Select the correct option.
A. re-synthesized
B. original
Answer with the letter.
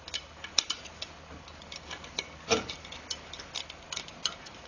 B